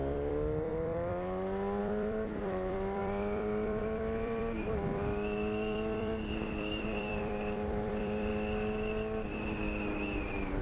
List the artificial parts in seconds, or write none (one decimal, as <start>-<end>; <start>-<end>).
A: 0.0-8.3; 10.2-10.6